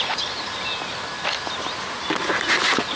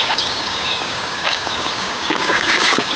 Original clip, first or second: first